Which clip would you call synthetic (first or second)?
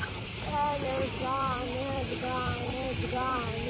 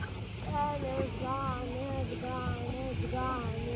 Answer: first